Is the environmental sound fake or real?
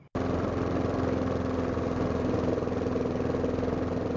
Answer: real